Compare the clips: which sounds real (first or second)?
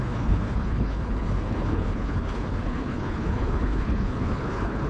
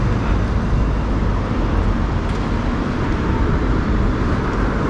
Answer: second